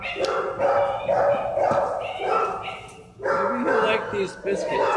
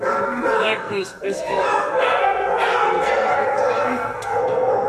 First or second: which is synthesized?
second